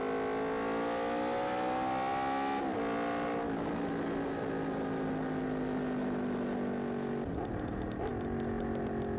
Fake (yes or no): no